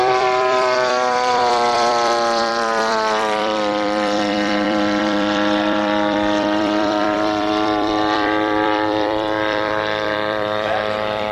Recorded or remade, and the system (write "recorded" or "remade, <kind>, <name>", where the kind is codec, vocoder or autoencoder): remade, vocoder, BigVGAN v2